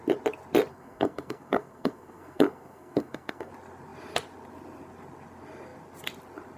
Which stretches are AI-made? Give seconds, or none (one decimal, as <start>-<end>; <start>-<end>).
0.7-3.5